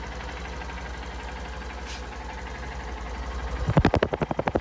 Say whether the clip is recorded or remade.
recorded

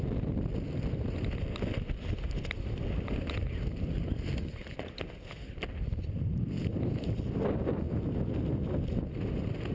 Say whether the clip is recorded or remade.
recorded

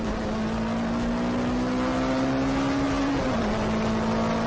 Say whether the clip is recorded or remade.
recorded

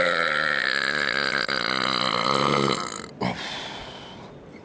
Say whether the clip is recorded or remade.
recorded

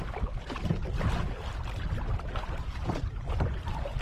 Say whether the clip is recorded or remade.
recorded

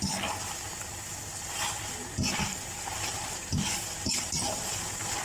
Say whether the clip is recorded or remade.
recorded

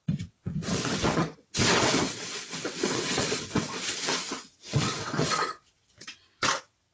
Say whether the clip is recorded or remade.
remade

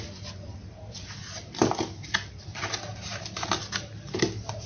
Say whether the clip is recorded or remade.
recorded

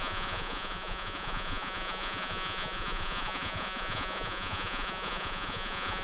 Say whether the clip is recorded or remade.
remade